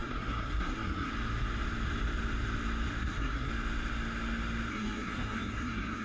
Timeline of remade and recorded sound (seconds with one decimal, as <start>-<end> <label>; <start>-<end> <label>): 0.0-1.1 remade; 1.1-3.0 recorded; 3.0-3.5 remade; 3.5-4.7 recorded; 4.7-6.0 remade

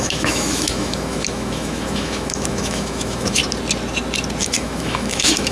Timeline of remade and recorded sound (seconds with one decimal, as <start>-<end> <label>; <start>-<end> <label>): 0.0-3.4 remade; 3.4-4.4 recorded; 4.4-5.5 remade

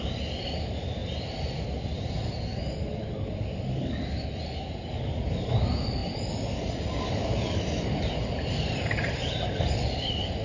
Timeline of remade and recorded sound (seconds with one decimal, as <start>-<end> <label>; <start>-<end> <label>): 0.0-6.0 recorded; 6.0-6.6 remade; 6.6-10.4 recorded

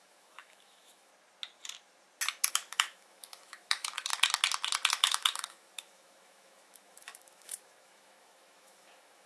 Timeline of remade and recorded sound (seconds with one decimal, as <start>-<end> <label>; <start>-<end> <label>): 0.0-1.1 remade; 1.1-2.5 recorded; 2.5-4.1 remade; 4.1-4.9 recorded; 4.9-9.3 remade